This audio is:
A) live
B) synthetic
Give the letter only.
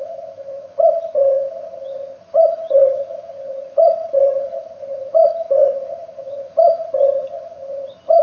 B